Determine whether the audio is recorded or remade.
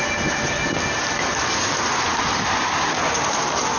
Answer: recorded